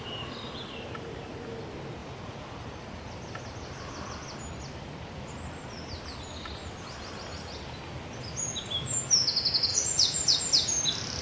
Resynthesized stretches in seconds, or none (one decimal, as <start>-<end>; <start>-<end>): 2.0-3.1; 9.7-10.4